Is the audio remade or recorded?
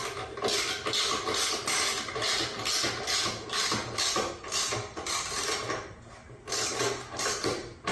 recorded